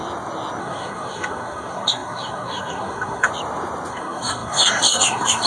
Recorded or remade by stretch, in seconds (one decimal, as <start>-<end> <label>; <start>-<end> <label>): 0.0-0.6 recorded; 0.6-3.3 remade; 3.3-3.9 recorded; 3.9-5.5 remade